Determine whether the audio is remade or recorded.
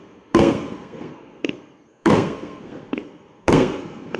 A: remade